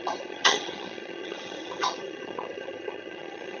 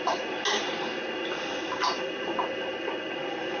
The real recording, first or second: second